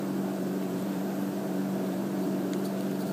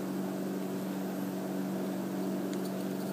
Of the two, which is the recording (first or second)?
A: second